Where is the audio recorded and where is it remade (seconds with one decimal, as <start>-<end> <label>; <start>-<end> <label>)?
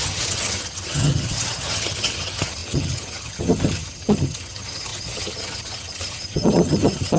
0.0-7.2 remade